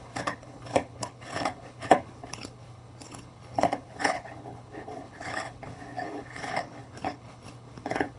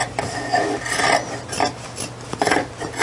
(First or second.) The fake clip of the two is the first